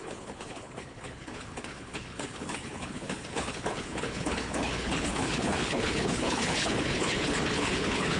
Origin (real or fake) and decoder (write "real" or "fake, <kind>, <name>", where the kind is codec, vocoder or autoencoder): fake, codec, HILCodec